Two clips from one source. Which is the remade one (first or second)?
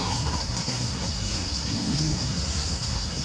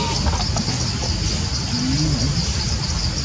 first